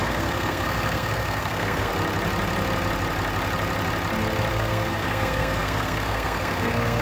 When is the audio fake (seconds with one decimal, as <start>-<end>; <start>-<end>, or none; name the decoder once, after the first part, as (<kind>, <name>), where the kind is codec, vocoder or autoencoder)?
0.0-1.9 (codec, SNAC); 4.5-7.0